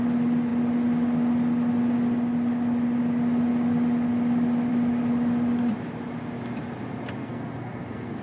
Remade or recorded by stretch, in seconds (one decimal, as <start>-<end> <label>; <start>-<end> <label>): 0.0-7.2 recorded; 7.2-8.2 remade